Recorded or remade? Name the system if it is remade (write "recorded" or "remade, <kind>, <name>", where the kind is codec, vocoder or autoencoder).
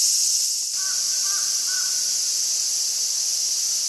recorded